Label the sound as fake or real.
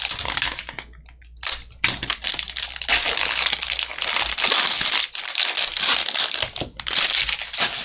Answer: real